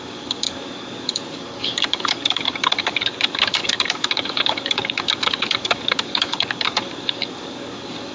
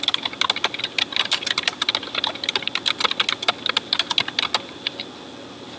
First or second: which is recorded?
second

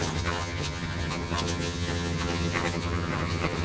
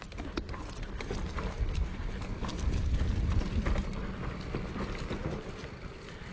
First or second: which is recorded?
second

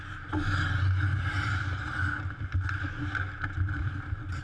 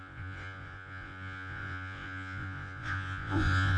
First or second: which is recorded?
first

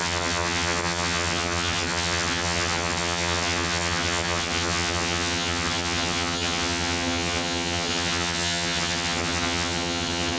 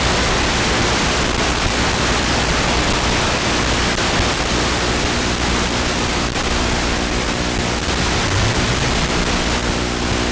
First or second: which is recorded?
second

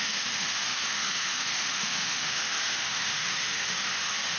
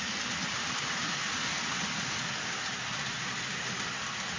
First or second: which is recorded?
second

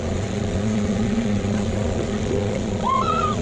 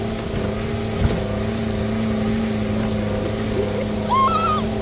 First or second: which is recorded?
second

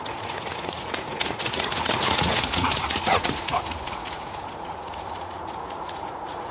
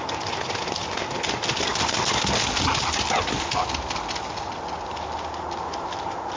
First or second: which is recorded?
second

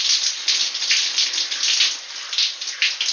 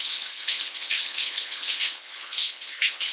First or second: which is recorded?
first